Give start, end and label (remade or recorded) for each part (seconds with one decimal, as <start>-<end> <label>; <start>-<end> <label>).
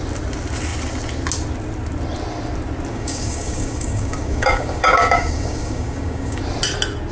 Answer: 0.0-2.9 recorded; 2.9-6.4 remade; 6.4-7.1 recorded